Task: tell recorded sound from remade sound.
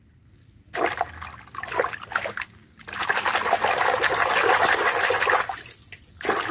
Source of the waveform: recorded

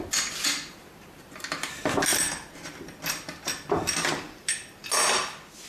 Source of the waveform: recorded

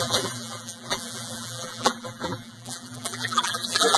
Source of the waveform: remade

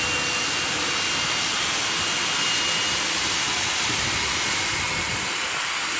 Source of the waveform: recorded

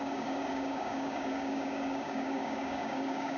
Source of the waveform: remade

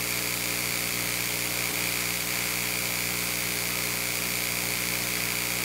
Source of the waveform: remade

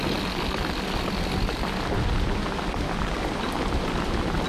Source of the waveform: recorded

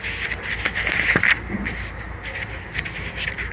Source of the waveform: recorded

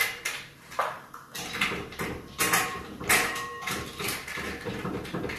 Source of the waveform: remade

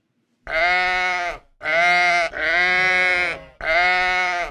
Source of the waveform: recorded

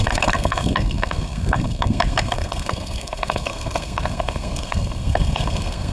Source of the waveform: remade